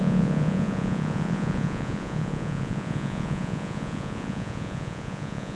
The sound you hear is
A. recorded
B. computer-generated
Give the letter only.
B